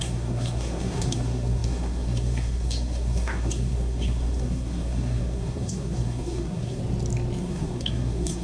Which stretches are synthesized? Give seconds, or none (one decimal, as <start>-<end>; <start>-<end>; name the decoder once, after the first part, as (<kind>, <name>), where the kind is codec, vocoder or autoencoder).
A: 0.0-6.8 (codec, SNAC); 7.4-8.4